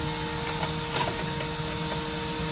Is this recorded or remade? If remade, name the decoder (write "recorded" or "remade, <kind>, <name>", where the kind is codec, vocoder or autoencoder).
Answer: recorded